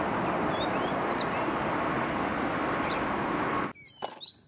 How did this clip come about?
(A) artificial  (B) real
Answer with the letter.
B